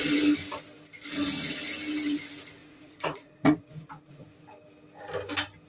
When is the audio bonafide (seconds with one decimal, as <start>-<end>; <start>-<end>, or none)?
0.0-2.6; 4.4-5.7